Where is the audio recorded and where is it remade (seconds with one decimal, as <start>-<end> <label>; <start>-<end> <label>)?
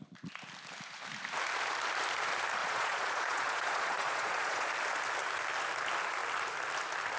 0.0-2.6 recorded; 2.6-4.7 remade; 4.7-7.2 recorded